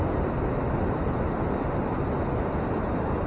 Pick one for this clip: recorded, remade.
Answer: recorded